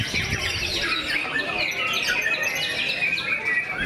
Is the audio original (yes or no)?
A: yes